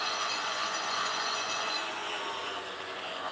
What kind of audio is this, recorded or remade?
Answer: remade